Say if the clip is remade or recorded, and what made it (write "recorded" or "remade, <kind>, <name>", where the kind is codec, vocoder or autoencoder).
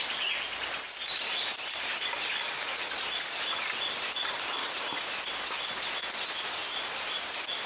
recorded